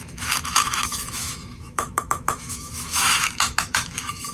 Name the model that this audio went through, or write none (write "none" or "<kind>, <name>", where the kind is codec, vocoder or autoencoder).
autoencoder, DAC-VAE